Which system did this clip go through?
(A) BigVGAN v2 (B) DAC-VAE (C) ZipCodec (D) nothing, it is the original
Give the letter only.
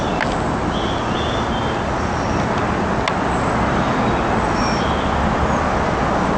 D